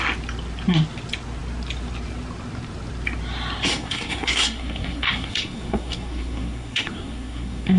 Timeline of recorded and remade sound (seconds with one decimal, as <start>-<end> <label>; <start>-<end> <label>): 0.0-3.7 recorded; 3.7-7.8 remade